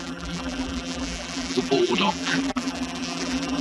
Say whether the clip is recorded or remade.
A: remade